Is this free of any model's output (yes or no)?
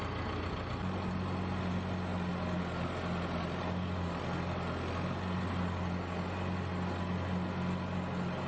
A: yes